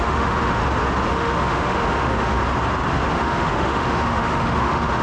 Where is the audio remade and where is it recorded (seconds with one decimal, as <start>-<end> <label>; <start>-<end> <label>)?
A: 0.0-0.6 remade; 0.6-1.1 recorded; 1.1-2.4 remade; 2.4-3.1 recorded; 3.1-5.0 remade